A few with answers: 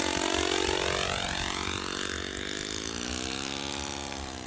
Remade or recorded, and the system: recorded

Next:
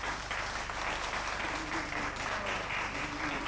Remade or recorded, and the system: recorded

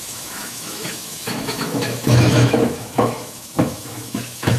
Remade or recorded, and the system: remade, autoencoder, DAC-VAE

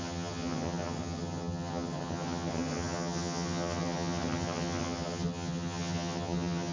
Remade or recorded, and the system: remade, vocoder, HiFi-GAN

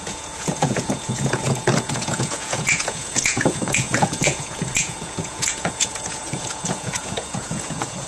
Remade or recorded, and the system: remade, vocoder, Vocos